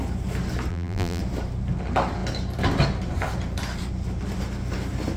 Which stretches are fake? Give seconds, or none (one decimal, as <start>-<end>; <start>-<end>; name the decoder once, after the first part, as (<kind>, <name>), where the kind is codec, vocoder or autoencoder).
0.7-1.2 (vocoder, BigVGAN v2)